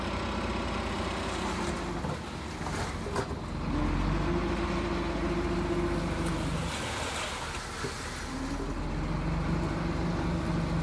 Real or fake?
real